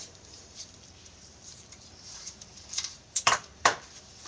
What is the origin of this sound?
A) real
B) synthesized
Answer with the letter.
B